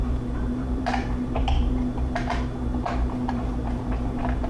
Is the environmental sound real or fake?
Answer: fake